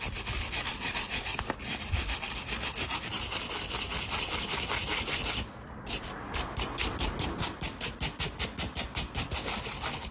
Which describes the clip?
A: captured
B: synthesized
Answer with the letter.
A